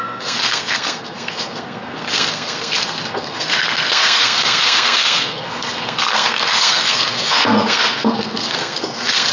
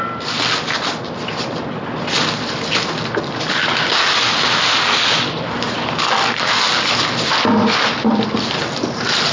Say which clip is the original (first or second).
second